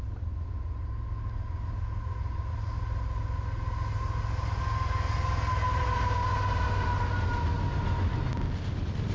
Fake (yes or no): no